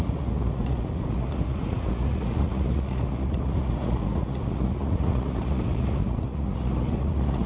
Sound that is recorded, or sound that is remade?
remade